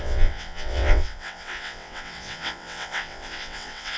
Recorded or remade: remade